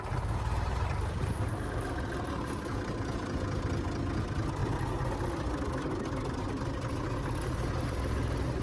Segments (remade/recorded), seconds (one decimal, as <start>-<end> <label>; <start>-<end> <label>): 0.0-8.6 recorded